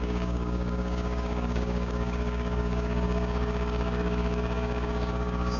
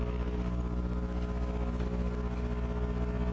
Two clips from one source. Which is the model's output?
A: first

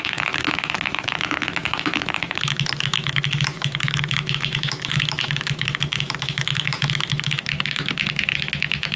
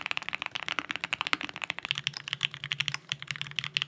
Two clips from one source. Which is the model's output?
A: first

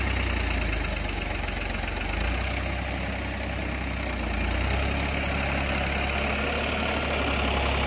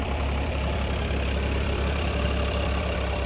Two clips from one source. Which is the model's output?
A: second